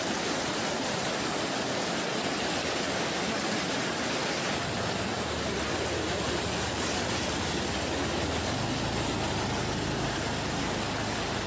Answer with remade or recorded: recorded